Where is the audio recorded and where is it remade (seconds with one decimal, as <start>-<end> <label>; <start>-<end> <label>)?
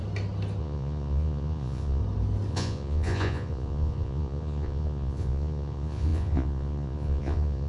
0.0-0.6 recorded; 0.6-2.0 remade; 2.0-2.5 recorded; 2.5-7.7 remade